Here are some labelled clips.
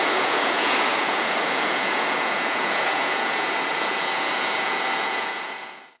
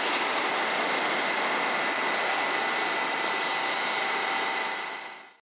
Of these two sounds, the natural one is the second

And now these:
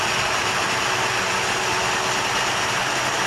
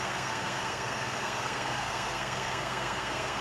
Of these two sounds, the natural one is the first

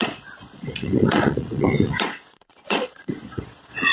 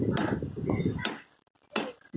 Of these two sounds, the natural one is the second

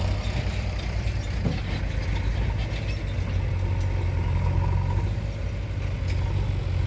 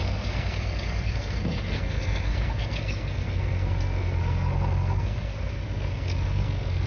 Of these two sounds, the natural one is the first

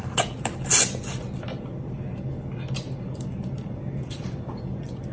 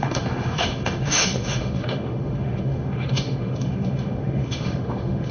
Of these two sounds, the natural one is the first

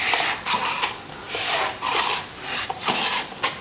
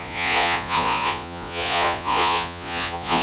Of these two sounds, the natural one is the first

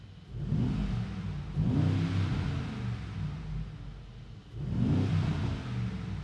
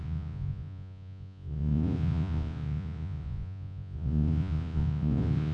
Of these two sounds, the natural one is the first